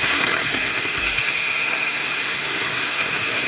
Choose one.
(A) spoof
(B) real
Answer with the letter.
A